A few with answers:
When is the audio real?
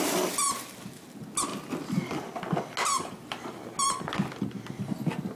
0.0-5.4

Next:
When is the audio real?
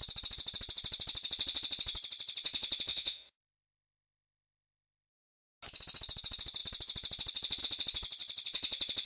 0.0-2.9; 5.1-9.1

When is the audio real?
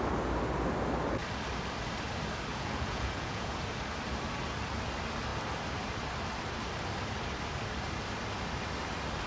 0.0-2.5; 3.6-9.3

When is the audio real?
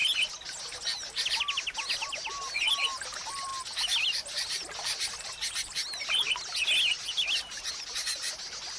0.0-8.8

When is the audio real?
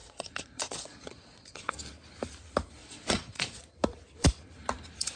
1.7-2.8; 3.6-5.2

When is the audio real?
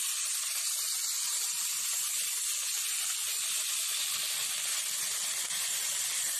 1.7-5.5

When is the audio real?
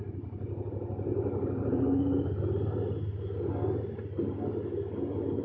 0.0-5.4